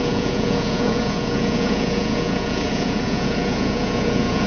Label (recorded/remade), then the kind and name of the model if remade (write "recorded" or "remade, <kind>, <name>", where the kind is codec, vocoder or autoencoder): remade, vocoder, Vocos